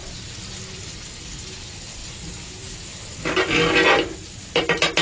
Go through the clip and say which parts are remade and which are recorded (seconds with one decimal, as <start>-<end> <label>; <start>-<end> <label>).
0.0-5.0 recorded